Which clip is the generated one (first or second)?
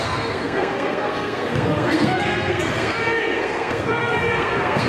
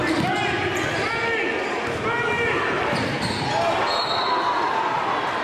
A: first